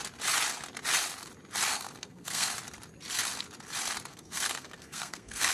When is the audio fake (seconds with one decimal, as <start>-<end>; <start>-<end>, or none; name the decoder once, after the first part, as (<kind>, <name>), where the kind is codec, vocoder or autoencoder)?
1.7-2.5 (codec, SNAC); 4.1-5.5